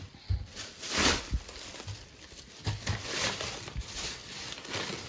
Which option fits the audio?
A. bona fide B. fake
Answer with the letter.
A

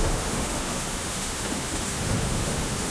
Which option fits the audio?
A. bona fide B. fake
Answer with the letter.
B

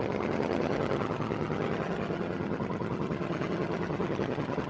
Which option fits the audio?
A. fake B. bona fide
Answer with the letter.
A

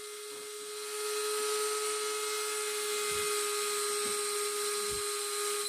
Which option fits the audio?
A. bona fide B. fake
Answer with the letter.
A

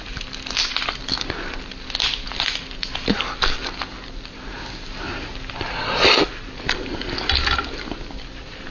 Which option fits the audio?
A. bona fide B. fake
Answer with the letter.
A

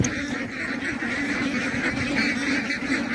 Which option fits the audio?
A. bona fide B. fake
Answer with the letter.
A